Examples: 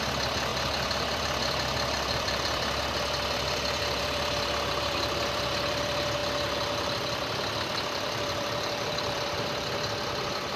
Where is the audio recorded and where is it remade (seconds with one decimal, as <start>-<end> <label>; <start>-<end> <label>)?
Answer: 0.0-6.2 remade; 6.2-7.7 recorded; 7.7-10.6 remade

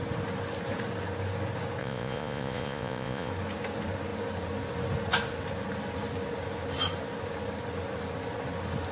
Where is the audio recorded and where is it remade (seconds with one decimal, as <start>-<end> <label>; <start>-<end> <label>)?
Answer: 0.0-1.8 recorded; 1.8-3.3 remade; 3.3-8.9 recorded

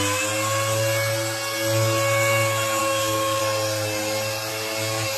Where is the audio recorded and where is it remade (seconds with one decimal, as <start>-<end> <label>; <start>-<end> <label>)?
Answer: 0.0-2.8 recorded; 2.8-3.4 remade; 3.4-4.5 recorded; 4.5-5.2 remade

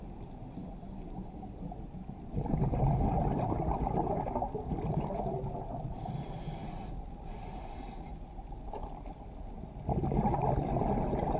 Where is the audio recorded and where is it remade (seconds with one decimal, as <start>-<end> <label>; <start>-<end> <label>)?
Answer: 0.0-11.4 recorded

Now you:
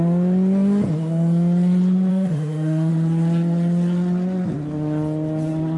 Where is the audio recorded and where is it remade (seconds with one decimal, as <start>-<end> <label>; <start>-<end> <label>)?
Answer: 0.0-2.1 recorded; 2.1-2.9 remade; 2.9-5.8 recorded

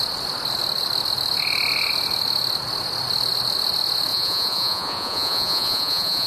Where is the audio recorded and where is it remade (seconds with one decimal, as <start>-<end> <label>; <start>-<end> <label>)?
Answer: 0.0-4.1 recorded; 4.1-6.3 remade

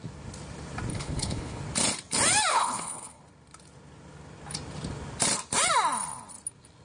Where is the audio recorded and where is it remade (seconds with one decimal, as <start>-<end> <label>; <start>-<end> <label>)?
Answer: 0.0-0.9 recorded; 0.9-1.6 remade; 1.6-2.5 recorded; 2.5-3.2 remade; 3.2-6.8 recorded

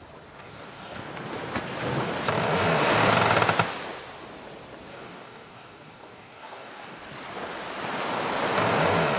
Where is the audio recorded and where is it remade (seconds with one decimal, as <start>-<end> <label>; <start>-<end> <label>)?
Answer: 0.0-0.4 recorded; 0.4-1.1 remade; 1.1-4.9 recorded; 4.9-7.0 remade; 7.0-9.2 recorded